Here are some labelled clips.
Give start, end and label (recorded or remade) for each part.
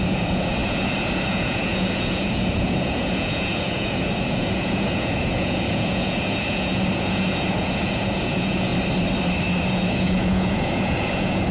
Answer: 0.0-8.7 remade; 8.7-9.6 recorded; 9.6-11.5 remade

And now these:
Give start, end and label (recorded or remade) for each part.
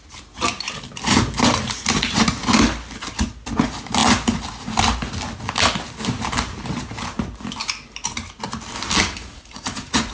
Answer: 0.0-9.2 recorded; 9.2-10.1 remade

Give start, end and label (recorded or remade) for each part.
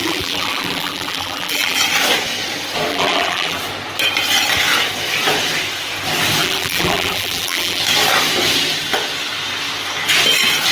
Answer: 0.0-1.8 remade; 1.8-2.9 recorded; 2.9-3.6 remade; 3.6-6.4 recorded; 6.4-7.8 remade; 7.8-10.7 recorded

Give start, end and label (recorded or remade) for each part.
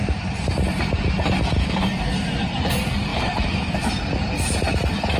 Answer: 0.0-0.5 remade; 0.5-2.1 recorded; 2.1-2.7 remade; 2.7-3.1 recorded; 3.1-4.4 remade; 4.4-5.2 recorded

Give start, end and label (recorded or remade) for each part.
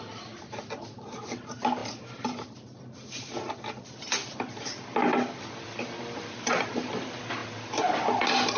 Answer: 0.0-8.6 recorded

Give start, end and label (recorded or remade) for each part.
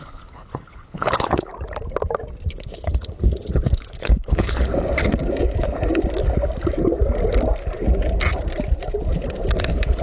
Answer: 0.0-1.5 remade; 1.5-2.5 recorded; 2.5-4.7 remade; 4.7-9.6 recorded; 9.6-10.0 remade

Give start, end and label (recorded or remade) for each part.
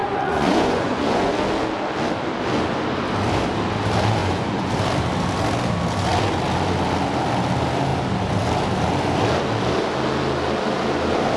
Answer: 0.0-1.3 remade; 1.3-4.2 recorded; 4.2-4.7 remade; 4.7-11.4 recorded